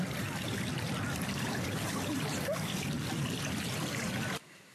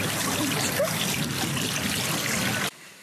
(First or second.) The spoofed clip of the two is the first